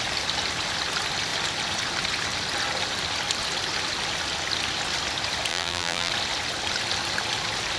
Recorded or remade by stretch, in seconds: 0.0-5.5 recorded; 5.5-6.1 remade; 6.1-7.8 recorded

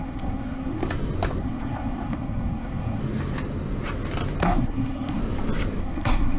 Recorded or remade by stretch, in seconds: 0.0-0.8 remade; 0.8-1.4 recorded; 1.4-3.0 remade; 3.0-4.4 recorded; 4.4-5.2 remade; 5.2-5.8 recorded; 5.8-6.4 remade

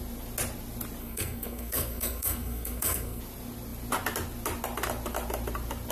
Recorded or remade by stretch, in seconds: 0.0-1.0 recorded; 1.0-3.2 remade; 3.2-5.9 recorded

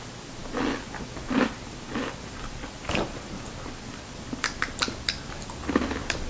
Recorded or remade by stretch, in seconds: 0.0-6.3 recorded

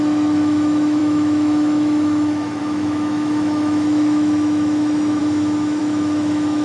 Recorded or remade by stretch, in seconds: 0.0-5.2 remade; 5.2-5.8 recorded; 5.8-6.6 remade

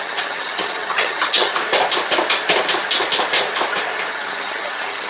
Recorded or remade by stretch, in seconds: 0.0-1.5 remade; 1.5-4.1 recorded; 4.1-5.1 remade

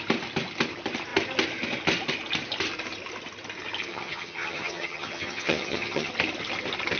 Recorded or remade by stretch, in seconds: 0.0-3.9 recorded; 3.9-6.1 remade; 6.1-7.0 recorded

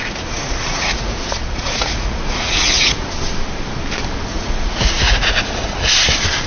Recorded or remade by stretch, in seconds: 0.0-3.1 remade; 3.1-4.3 recorded; 4.3-5.9 remade; 5.9-6.5 recorded